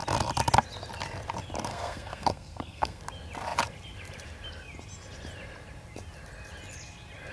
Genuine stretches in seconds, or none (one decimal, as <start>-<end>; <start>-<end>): 0.0-1.7; 3.0-7.3